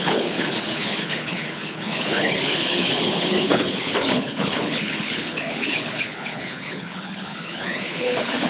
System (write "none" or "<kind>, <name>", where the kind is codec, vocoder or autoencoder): codec, HILCodec